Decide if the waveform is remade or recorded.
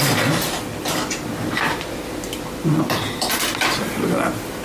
recorded